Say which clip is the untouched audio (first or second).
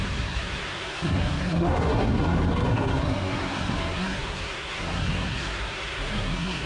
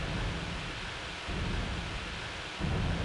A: second